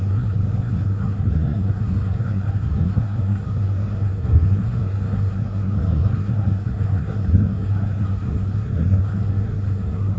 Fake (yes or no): yes